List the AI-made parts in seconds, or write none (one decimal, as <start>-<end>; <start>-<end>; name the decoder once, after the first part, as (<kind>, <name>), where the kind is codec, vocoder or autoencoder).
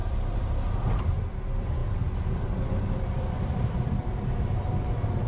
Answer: 0.0-1.8 (vocoder, BigVGAN v2); 2.3-4.0